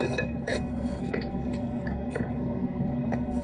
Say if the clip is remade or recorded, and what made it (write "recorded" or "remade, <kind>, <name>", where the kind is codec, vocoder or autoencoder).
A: remade, codec, SNAC